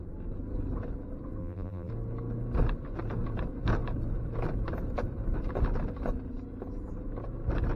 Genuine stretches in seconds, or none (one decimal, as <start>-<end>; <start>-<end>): 0.0-1.4; 1.9-7.8